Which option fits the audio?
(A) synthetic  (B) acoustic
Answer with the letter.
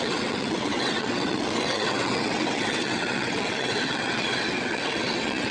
A